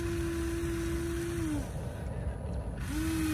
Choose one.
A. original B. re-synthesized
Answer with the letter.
A